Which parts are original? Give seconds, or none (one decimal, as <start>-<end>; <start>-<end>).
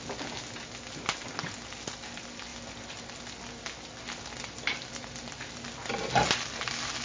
0.0-7.0